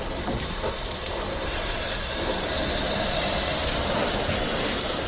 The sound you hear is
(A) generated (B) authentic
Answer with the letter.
A